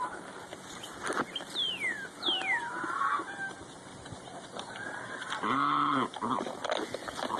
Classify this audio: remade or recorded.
recorded